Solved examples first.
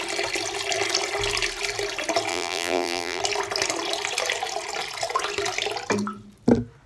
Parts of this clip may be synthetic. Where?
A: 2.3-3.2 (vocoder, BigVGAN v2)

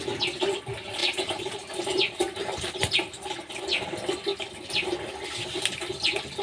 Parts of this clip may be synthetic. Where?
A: 1.0-3.5 (vocoder, BigVGAN v2)

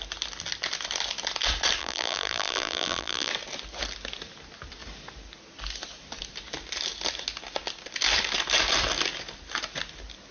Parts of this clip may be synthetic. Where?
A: 1.8-3.3 (vocoder, BigVGAN v2)

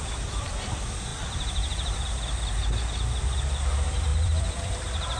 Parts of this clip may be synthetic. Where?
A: 1.1-2.1 (vocoder, BigVGAN v2); 4.1-4.8

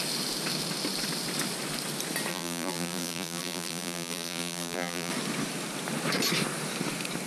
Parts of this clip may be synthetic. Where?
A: 2.3-5.1 (vocoder, BigVGAN v2)